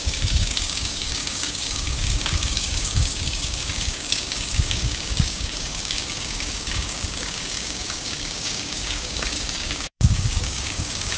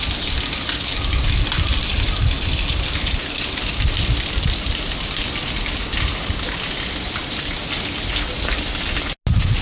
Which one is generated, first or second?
first